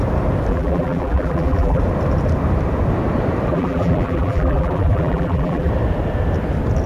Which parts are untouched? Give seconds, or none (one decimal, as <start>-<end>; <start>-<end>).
0.0-0.5; 1.8-3.5; 5.7-6.9